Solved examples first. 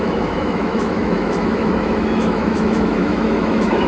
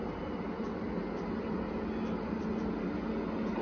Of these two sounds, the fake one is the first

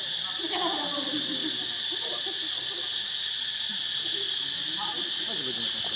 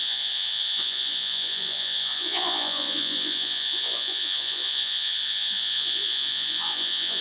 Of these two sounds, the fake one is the second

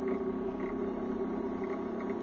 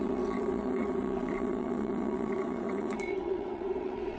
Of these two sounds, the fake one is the second